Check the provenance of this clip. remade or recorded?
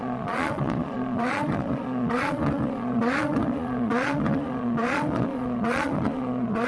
remade